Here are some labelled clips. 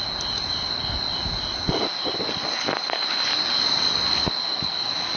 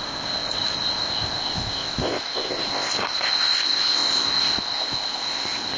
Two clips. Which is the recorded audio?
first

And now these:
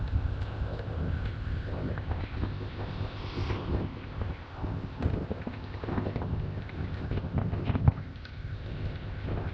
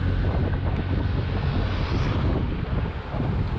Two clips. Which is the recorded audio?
second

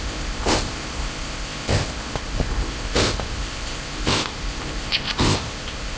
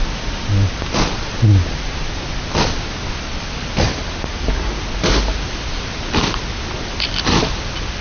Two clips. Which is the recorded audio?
second